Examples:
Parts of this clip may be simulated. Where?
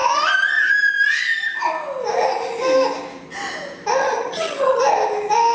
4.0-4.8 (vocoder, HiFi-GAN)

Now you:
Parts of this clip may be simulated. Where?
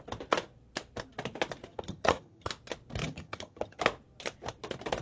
1.7-2.5 (vocoder, HiFi-GAN); 3.0-3.8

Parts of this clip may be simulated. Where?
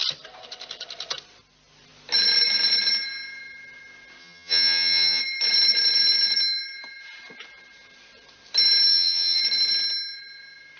4.2-5.2 (vocoder, HiFi-GAN); 8.9-9.4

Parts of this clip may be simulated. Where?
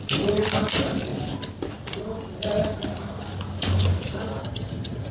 4.4-5.1 (vocoder, HiFi-GAN)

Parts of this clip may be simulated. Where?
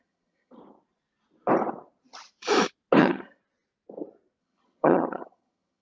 0.0-0.6 (vocoder, HiFi-GAN); 3.0-3.4; 4.4-5.8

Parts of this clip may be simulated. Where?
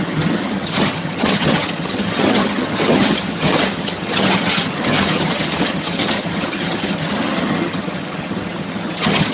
0.0-9.3 (vocoder, HiFi-GAN)